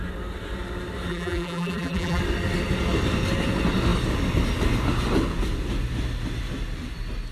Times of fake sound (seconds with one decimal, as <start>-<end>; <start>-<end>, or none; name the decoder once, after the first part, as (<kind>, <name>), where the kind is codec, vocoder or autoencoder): 1.1-2.2 (vocoder, BigVGAN v2)